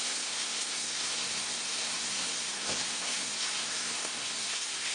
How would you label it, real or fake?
fake